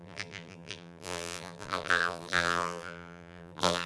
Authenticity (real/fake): fake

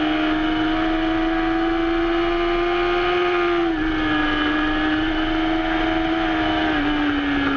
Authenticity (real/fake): real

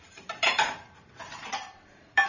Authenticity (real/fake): fake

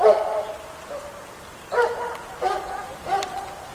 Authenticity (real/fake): real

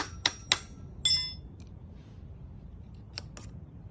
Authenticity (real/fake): real